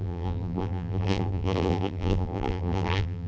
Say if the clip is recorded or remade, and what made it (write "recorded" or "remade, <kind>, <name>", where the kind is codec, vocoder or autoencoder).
remade, vocoder, BigVGAN v2